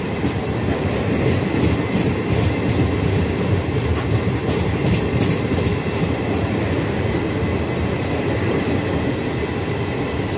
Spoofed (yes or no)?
no